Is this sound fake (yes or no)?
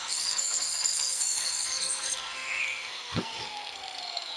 yes